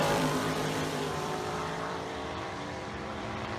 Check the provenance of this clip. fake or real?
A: fake